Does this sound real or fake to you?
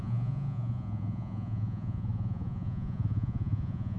fake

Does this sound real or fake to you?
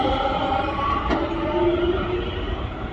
fake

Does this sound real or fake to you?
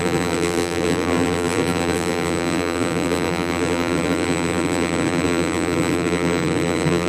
fake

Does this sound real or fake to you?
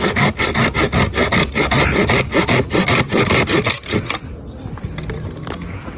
real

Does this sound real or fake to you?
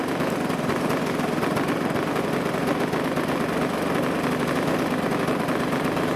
real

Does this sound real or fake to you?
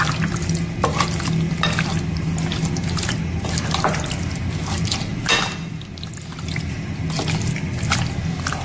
real